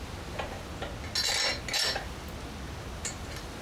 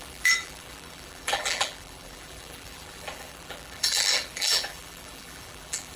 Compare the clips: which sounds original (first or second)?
first